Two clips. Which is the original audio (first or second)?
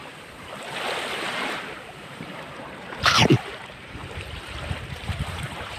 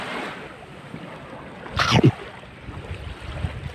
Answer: second